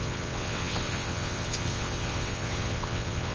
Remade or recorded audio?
remade